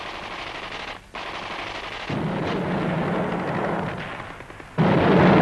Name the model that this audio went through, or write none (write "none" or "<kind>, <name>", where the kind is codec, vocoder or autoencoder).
none